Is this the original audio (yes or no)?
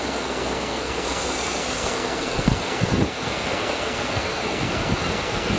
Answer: no